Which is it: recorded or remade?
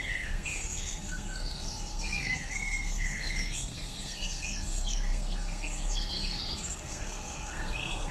remade